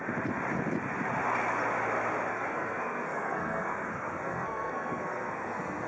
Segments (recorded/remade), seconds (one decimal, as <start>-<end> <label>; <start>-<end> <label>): 0.0-2.3 recorded; 2.3-5.9 remade